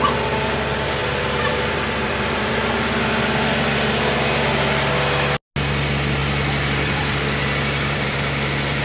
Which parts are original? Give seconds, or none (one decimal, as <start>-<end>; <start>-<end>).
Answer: 0.0-1.0; 2.5-6.2